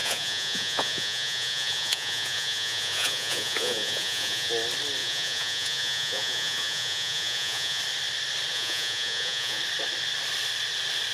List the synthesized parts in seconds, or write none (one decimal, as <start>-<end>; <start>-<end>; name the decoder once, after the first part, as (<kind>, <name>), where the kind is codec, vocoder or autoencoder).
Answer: 0.0-4.5 (vocoder, Vocos); 5.0-7.8; 8.5-9.6